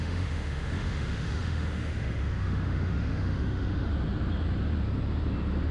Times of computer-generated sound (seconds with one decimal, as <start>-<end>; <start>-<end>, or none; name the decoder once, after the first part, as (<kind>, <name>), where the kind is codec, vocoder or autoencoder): 0.0-3.9 (autoencoder, DAC-VAE)